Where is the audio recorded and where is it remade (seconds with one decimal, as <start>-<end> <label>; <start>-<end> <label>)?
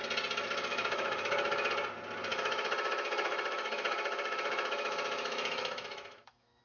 0.0-0.7 recorded; 0.7-1.7 remade; 1.7-2.3 recorded; 2.3-6.6 remade